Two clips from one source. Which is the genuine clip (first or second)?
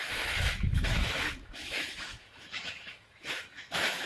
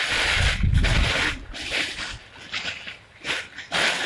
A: second